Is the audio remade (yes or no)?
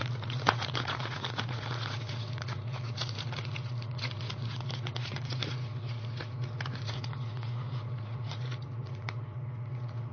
yes